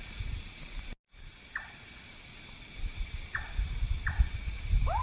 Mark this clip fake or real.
real